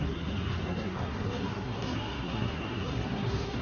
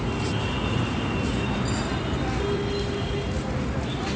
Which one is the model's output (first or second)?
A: first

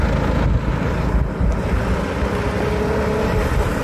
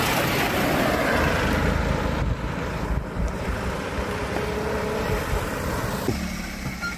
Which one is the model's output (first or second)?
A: second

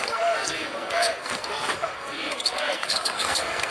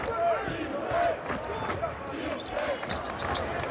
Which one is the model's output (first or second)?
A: first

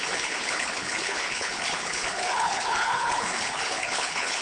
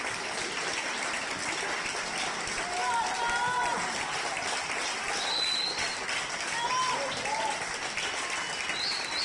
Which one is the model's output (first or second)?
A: first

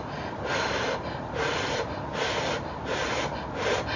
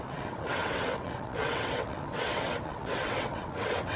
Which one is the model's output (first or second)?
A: second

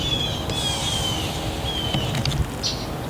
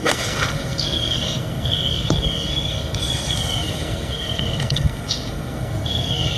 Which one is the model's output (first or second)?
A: second